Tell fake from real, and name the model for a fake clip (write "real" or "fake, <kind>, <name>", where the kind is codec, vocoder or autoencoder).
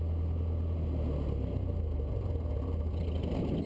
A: real